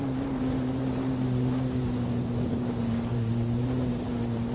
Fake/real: fake